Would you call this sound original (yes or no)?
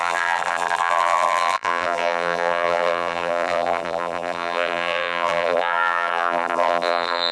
no